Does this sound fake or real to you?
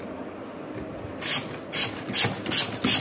real